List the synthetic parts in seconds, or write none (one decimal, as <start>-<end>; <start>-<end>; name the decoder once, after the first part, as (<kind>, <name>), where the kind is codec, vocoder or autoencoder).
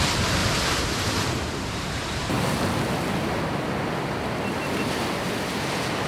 0.4-2.6 (vocoder, BigVGAN v2)